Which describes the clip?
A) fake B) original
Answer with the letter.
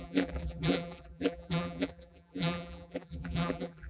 A